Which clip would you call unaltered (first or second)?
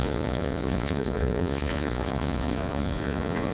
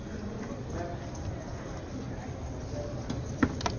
second